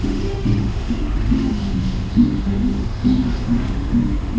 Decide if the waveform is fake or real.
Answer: fake